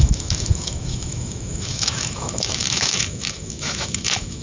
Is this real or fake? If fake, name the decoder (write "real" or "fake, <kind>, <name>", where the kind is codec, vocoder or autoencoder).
fake, autoencoder, DAC-VAE